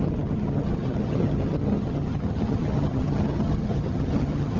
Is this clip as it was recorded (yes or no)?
no